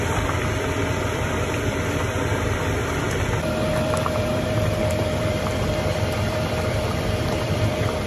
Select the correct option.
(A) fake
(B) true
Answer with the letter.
A